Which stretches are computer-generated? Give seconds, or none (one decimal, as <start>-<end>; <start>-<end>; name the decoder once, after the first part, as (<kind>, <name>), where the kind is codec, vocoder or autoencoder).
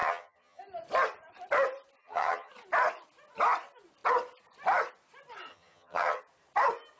0.0-0.6 (vocoder, HiFi-GAN); 2.0-2.5; 5.5-6.2